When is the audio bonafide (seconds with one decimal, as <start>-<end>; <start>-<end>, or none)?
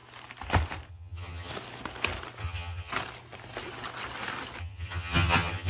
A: 0.0-0.9; 1.5-2.4; 2.9-4.6